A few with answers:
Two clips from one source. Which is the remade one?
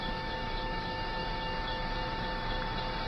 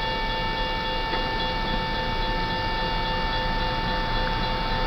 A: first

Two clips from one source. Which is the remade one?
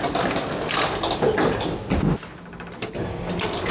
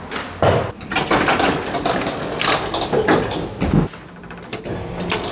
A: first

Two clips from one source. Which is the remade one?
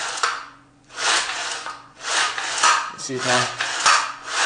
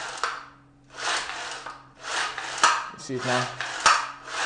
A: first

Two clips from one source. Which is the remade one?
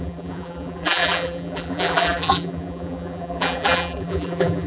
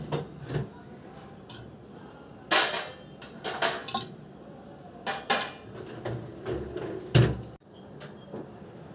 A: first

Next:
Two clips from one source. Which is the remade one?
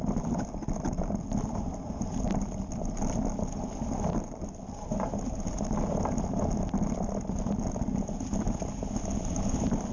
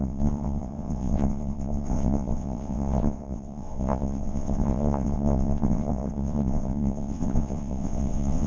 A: second